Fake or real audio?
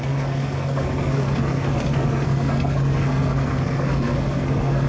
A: fake